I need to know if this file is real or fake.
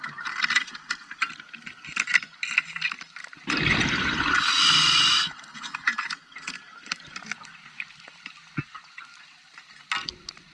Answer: real